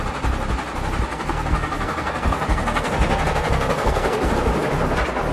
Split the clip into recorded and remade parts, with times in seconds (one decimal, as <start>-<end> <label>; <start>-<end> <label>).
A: 0.0-1.1 recorded; 1.1-4.3 remade; 4.3-5.3 recorded